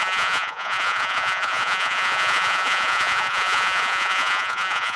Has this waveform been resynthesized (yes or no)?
yes